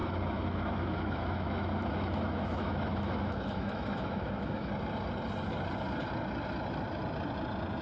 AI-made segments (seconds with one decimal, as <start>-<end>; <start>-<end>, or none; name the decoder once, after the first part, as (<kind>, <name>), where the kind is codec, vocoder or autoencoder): 0.0-4.7 (autoencoder, DAC-VAE)